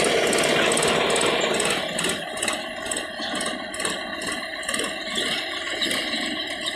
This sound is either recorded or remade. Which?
recorded